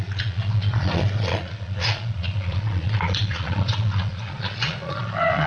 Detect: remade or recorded remade